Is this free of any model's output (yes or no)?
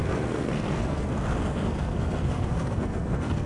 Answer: no